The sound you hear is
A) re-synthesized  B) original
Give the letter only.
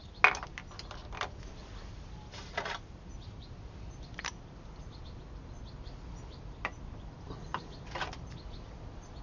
B